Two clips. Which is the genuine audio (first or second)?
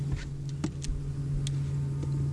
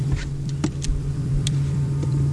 first